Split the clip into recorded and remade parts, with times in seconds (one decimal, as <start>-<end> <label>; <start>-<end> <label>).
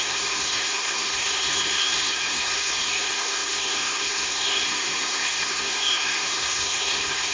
0.0-7.3 remade